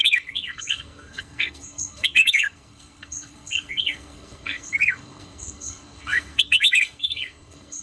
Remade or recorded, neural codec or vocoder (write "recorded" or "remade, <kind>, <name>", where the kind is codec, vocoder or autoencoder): remade, codec, SNAC